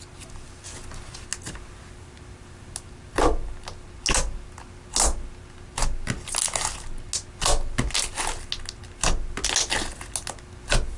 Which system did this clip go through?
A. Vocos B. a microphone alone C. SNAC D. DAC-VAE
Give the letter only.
B